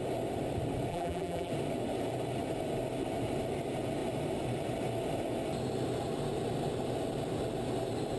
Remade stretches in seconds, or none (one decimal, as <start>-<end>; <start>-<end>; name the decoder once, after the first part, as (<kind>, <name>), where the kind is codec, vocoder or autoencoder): 0.9-1.5 (vocoder, BigVGAN v2)